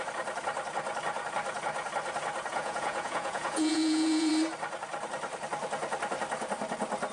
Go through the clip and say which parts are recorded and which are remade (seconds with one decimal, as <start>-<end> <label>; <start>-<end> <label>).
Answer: 0.0-2.5 recorded; 2.5-4.3 remade; 4.3-7.1 recorded